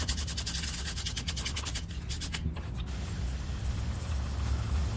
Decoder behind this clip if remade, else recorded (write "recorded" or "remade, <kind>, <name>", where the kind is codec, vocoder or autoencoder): recorded